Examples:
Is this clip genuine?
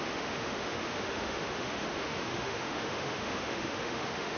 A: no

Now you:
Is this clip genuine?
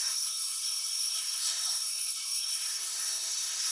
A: no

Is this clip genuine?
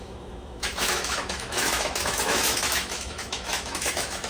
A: no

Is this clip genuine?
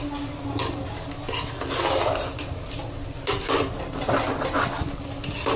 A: yes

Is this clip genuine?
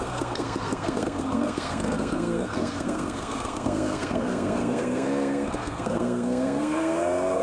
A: no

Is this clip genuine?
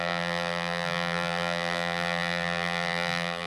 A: no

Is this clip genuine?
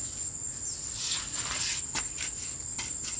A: yes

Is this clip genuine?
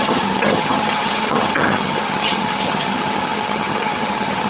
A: no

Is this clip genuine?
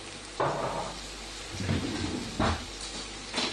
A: yes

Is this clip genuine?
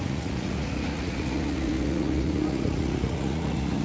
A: no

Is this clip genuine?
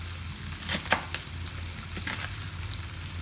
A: yes